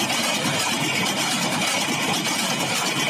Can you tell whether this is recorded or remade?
recorded